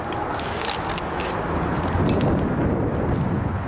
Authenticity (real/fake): real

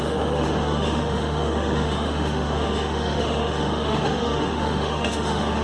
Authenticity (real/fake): fake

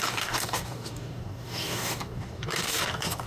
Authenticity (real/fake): fake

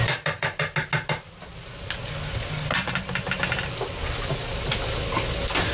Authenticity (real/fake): real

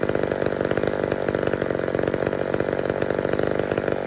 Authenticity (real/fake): real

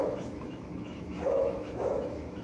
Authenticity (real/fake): fake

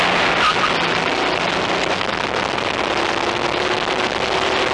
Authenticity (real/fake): real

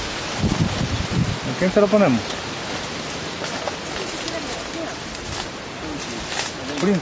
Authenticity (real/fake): real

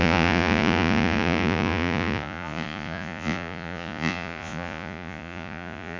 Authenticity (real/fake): fake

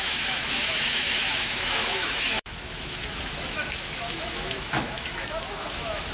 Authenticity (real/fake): fake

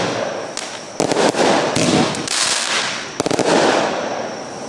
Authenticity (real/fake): real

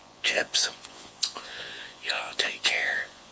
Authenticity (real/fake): fake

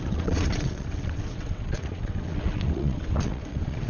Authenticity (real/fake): fake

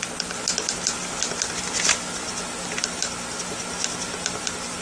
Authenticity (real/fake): real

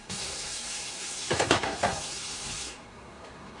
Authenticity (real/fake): fake